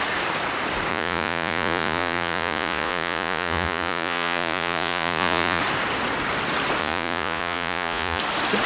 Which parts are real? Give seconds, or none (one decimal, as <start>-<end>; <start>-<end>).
0.0-0.9; 5.6-6.8; 8.2-8.7